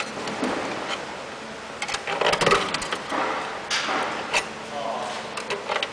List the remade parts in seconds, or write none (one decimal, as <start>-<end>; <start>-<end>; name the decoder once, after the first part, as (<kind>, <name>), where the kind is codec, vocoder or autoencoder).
none